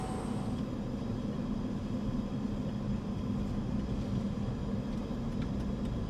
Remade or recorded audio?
recorded